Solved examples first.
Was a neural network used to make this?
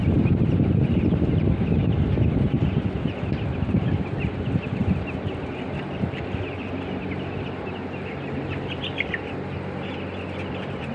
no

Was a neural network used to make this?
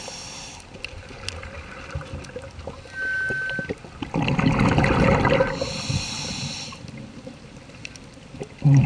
no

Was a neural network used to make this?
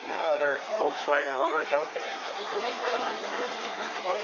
yes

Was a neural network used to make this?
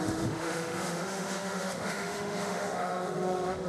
yes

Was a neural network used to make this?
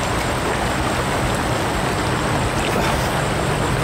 no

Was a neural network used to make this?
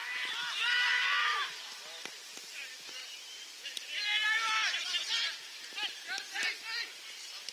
no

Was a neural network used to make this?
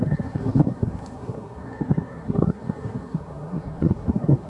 yes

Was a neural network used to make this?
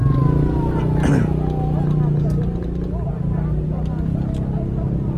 no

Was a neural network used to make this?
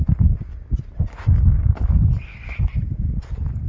no